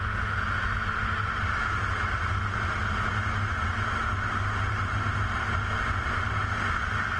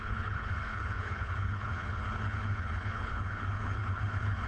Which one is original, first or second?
first